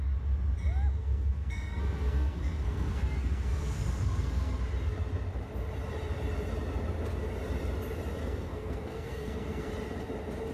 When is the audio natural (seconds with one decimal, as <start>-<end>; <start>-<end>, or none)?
0.0-1.0; 4.6-8.2; 9.7-10.5